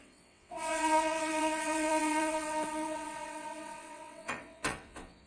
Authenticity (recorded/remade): remade